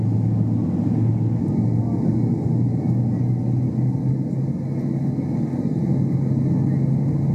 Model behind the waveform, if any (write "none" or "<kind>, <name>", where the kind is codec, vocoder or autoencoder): none